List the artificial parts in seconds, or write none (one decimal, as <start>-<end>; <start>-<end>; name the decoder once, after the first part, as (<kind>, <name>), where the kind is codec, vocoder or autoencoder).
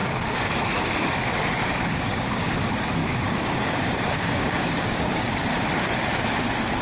0.0-0.5 (codec, DAC); 1.5-2.5; 3.0-5.2